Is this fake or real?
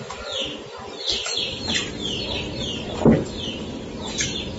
real